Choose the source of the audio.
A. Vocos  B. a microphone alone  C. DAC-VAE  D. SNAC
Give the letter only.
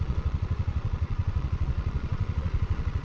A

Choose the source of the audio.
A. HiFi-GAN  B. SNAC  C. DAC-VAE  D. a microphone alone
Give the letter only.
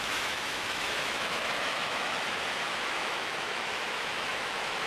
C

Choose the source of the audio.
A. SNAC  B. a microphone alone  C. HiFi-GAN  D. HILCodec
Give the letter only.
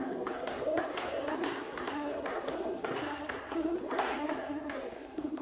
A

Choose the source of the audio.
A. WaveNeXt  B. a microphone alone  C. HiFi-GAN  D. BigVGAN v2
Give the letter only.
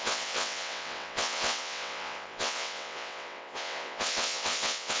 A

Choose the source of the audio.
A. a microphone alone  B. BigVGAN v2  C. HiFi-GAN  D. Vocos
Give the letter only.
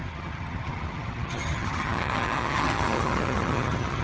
C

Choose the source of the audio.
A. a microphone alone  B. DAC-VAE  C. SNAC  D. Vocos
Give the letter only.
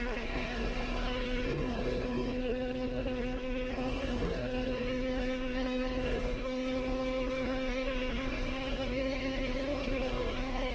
C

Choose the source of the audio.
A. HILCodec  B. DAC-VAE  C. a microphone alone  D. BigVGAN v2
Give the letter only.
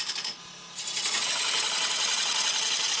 D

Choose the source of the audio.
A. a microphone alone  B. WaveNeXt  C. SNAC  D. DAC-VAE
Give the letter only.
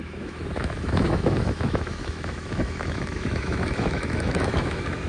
D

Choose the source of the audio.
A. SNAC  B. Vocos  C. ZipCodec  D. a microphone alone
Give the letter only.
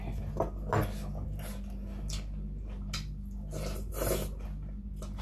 D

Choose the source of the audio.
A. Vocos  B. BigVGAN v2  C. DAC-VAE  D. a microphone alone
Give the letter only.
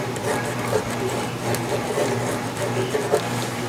D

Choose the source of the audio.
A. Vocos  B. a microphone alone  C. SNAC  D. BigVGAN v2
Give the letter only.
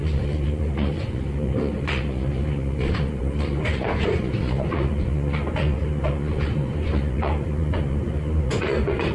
A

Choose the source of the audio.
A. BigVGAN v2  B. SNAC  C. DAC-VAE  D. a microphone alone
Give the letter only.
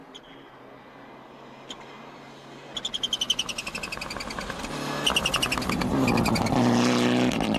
D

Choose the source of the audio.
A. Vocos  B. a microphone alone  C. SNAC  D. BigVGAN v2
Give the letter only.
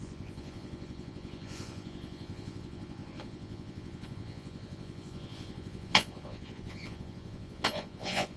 A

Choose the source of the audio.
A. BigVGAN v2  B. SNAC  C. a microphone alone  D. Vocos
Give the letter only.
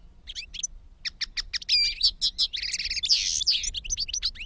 C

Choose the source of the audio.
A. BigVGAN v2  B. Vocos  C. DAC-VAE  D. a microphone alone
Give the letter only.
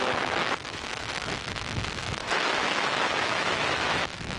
C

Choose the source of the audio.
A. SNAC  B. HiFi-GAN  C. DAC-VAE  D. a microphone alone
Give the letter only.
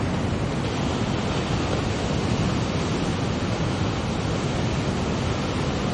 D